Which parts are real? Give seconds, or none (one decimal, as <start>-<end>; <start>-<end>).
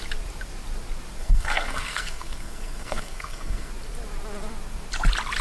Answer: 0.0-1.2; 3.7-5.4